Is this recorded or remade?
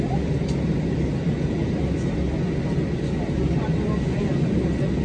recorded